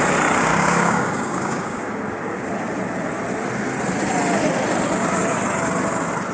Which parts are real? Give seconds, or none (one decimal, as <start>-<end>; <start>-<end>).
0.0-0.5; 1.9-6.3